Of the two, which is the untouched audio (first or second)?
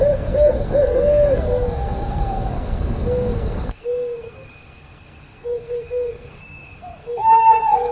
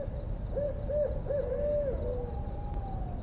second